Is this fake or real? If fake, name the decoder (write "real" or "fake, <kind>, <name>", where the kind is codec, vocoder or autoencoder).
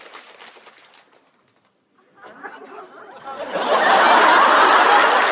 real